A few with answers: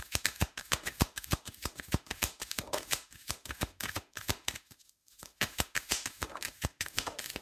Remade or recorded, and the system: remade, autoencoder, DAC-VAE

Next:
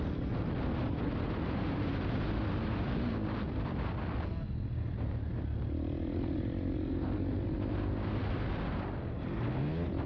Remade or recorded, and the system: recorded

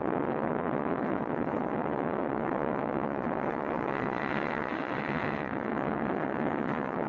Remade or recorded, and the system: remade, vocoder, WaveNeXt